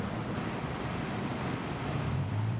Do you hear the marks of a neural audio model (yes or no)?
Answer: yes